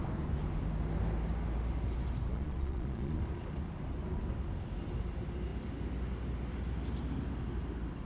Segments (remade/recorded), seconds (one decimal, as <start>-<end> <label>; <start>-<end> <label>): 0.0-2.3 recorded; 2.3-3.2 remade; 3.2-8.0 recorded

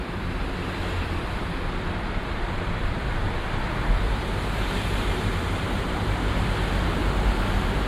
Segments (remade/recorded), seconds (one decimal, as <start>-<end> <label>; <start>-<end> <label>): 0.0-7.0 remade; 7.0-7.9 recorded